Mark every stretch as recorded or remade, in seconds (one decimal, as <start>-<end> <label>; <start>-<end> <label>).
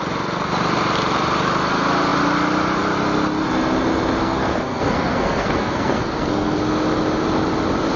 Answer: 0.0-4.2 recorded; 4.2-6.6 remade; 6.6-8.0 recorded